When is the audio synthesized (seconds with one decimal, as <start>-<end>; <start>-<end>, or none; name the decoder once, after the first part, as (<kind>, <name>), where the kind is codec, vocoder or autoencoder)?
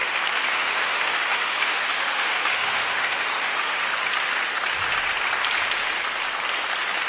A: 0.5-3.9 (autoencoder, DAC-VAE)